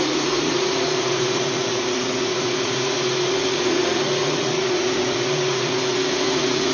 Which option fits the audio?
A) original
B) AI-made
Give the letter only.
B